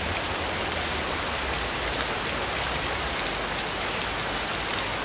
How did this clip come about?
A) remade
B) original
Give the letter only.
B